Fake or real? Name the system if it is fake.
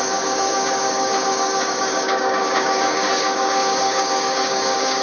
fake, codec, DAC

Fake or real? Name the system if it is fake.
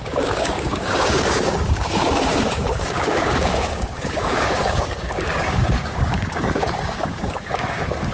fake, codec, DAC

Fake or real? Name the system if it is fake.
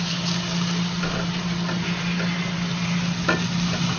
real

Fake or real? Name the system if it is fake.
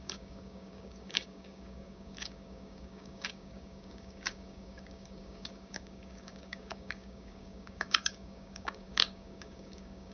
fake, codec, DAC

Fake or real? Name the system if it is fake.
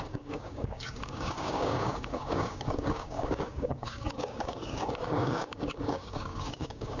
fake, codec, DAC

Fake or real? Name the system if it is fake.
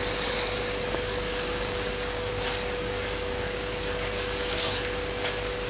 fake, codec, DAC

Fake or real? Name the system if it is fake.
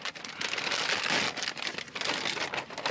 real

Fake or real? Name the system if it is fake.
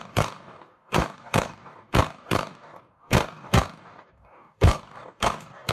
fake, codec, DAC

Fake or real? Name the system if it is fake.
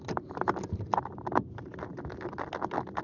real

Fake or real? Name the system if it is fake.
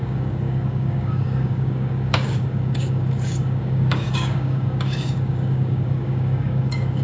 fake, codec, DAC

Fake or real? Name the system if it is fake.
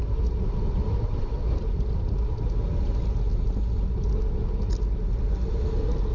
real